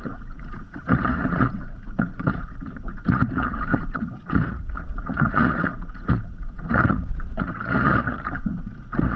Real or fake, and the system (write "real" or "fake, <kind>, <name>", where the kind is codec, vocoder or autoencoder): fake, vocoder, Vocos